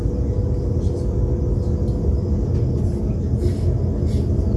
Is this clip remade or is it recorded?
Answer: recorded